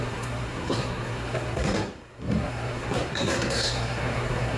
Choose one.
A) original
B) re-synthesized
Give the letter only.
B